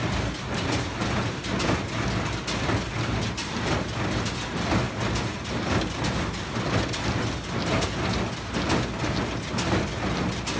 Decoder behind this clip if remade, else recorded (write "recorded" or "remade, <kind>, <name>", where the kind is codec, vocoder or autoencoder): recorded